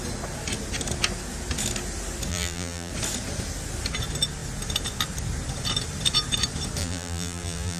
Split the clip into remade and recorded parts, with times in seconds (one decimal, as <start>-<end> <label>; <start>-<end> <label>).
0.0-2.3 recorded; 2.3-2.9 remade; 2.9-6.8 recorded; 6.8-7.8 remade